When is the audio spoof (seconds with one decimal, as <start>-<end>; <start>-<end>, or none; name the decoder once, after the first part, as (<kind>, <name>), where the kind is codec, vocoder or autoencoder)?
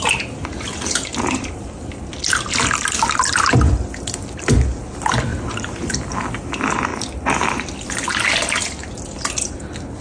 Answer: 5.3-6.1 (vocoder, BigVGAN v2)